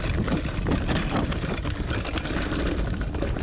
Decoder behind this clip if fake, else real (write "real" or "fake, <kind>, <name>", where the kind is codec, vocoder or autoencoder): real